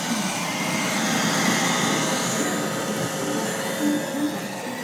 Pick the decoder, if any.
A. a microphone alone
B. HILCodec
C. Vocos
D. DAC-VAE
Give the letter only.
A